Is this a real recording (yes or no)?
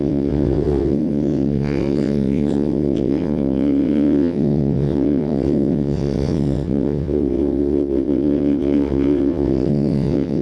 no